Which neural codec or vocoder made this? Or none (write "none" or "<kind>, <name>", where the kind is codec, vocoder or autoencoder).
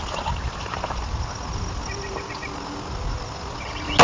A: none